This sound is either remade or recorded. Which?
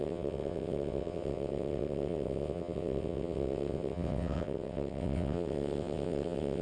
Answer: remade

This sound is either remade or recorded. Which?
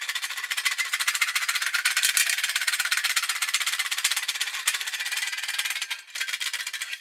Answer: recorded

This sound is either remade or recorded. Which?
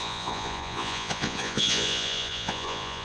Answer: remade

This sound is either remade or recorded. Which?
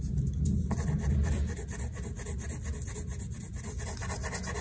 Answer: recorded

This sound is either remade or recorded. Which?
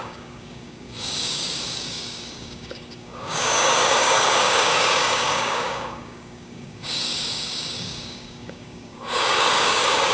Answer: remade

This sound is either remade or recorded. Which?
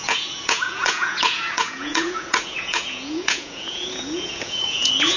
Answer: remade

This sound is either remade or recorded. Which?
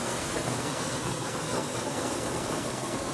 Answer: remade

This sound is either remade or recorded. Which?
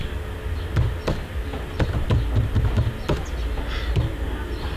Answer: recorded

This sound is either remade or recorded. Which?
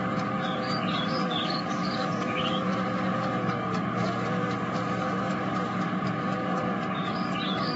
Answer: remade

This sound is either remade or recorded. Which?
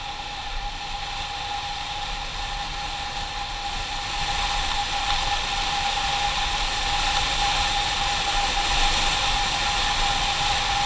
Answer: recorded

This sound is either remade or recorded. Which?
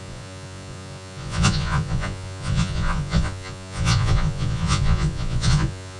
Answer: remade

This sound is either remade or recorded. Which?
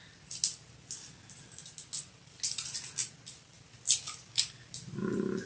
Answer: recorded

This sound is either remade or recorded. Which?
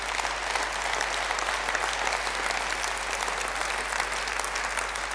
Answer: recorded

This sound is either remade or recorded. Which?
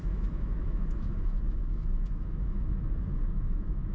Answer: remade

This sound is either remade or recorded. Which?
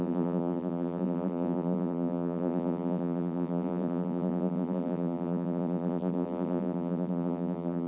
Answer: remade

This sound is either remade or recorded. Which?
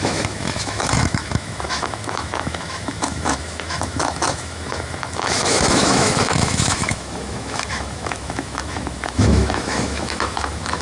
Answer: remade